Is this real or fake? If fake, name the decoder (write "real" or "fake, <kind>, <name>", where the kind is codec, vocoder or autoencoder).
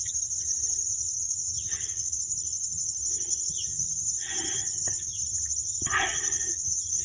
fake, vocoder, HiFi-GAN